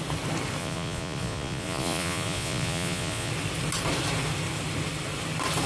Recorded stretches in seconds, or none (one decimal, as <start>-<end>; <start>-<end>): 0.0-0.6; 3.3-5.7

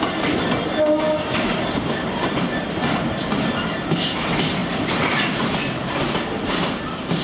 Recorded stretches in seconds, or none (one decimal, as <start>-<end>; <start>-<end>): 0.0-7.2

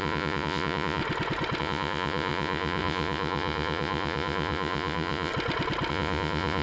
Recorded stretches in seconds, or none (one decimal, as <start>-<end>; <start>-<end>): 1.0-1.6; 5.3-5.9

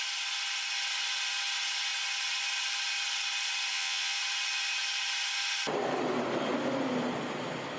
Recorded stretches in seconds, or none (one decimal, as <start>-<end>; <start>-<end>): 0.0-3.7; 4.2-7.8

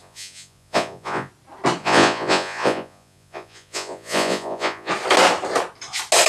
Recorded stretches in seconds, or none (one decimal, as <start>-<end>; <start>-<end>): 1.3-1.8; 4.9-6.3